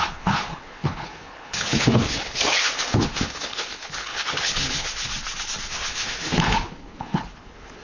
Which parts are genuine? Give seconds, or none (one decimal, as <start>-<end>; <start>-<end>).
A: 5.1-5.7